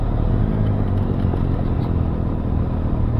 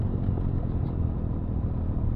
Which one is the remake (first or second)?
second